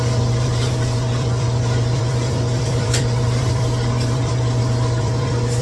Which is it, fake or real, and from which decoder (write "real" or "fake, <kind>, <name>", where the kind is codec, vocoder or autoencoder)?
fake, vocoder, BigVGAN v2